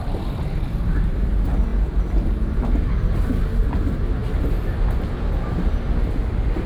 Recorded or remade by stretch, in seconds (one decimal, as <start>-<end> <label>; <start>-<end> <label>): 0.0-6.7 recorded